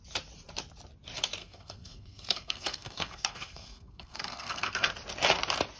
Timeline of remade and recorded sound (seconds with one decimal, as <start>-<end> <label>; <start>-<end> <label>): 0.0-1.4 recorded; 1.4-4.9 remade; 4.9-5.8 recorded